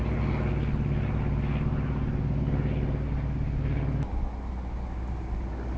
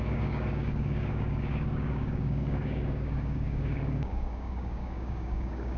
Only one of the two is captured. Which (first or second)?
first